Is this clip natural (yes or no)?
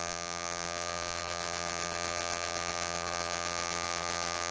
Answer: no